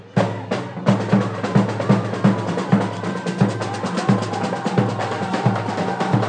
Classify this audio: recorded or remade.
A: recorded